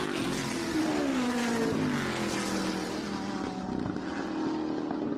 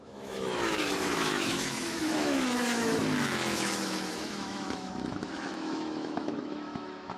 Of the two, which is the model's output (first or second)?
second